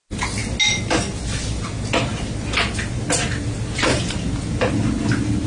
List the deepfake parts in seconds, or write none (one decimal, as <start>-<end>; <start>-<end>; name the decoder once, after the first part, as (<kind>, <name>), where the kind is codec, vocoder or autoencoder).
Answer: none